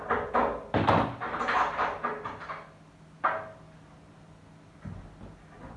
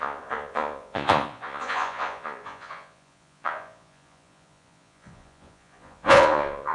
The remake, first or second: second